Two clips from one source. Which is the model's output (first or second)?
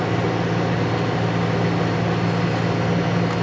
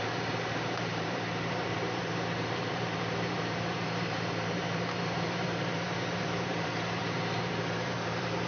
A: second